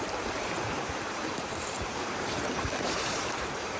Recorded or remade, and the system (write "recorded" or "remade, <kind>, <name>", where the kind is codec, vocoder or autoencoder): remade, vocoder, BigVGAN v2